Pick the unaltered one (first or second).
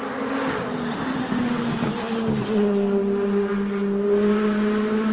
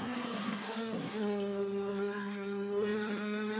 first